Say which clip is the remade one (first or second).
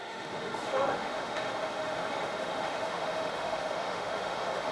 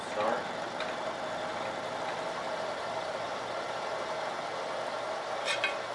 first